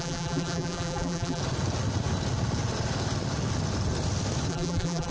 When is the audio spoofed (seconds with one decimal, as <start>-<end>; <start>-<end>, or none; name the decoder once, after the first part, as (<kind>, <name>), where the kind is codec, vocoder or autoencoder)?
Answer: 0.0-1.4 (vocoder, BigVGAN v2); 4.5-5.1